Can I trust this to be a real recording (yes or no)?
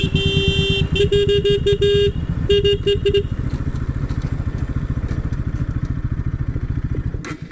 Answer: yes